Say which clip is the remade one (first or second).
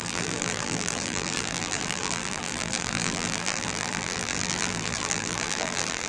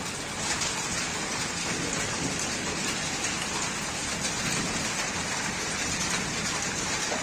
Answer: first